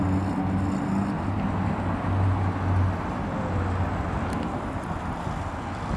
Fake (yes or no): no